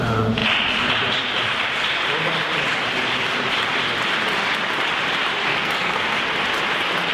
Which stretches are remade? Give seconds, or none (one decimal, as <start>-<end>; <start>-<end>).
5.5-6.2